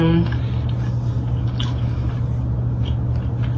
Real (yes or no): yes